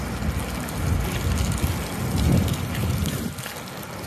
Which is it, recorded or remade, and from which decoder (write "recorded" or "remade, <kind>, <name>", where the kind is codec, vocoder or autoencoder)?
recorded